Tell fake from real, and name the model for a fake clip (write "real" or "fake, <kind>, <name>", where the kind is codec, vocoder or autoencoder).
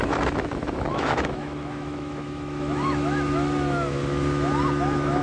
fake, autoencoder, DAC-VAE